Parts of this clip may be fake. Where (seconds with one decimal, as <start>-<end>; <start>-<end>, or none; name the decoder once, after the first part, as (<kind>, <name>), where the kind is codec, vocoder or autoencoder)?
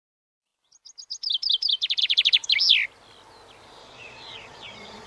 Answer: 3.8-5.1 (vocoder, Vocos)